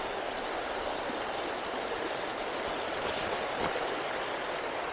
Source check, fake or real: real